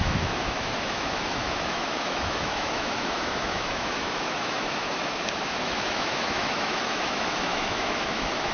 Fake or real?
fake